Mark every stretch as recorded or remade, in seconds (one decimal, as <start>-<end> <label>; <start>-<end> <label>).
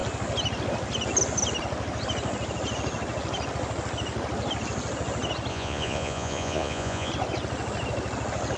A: 0.0-5.5 recorded; 5.5-7.1 remade; 7.1-8.6 recorded